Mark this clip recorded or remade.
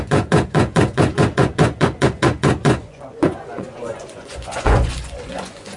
remade